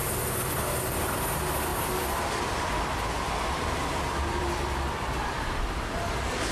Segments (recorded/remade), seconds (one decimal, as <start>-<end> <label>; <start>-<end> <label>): 0.0-1.7 recorded; 1.7-5.6 remade; 5.6-6.5 recorded